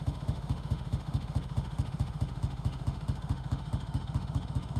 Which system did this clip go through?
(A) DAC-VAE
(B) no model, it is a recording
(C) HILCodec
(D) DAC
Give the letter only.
A